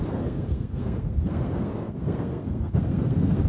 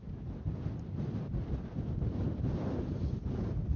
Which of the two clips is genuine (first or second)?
second